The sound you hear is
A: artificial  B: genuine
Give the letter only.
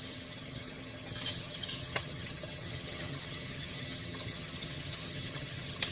A